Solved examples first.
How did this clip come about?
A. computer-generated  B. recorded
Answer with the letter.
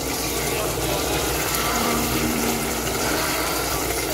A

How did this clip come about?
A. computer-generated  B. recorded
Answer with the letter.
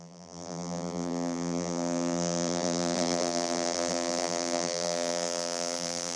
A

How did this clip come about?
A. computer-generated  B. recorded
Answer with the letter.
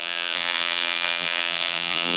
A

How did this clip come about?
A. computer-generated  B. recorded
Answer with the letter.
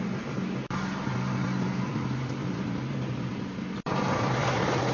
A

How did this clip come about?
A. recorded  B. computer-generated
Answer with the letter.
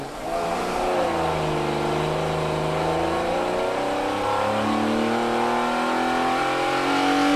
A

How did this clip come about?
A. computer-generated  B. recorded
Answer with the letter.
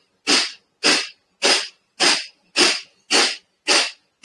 B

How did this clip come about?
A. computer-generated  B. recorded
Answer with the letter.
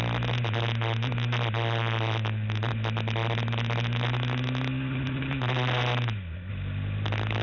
B